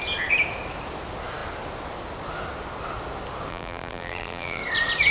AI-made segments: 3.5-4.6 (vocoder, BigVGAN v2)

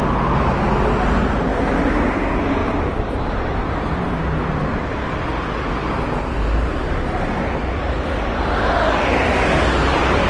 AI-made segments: 2.6-5.1 (vocoder, BigVGAN v2)

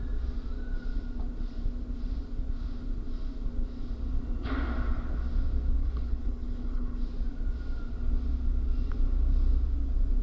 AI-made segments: 5.8-7.0 (codec, HILCodec)